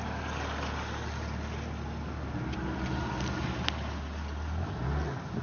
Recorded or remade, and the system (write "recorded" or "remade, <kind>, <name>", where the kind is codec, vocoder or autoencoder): recorded